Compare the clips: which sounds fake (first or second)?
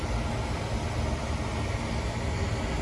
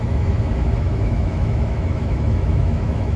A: second